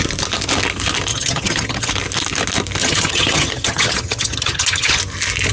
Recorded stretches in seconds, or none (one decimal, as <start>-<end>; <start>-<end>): 0.0-1.1; 1.9-2.8; 5.0-5.5